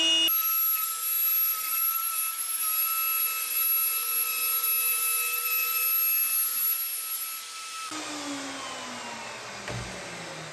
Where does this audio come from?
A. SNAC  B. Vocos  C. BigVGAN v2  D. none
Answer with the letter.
D